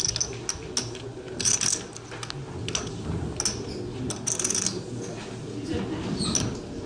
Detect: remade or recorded recorded